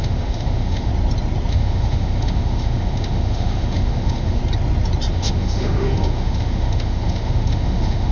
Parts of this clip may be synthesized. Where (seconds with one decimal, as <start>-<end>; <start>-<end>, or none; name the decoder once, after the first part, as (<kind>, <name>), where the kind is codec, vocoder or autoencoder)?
0.0-0.9 (autoencoder, DAC-VAE); 1.5-4.4; 5.1-8.1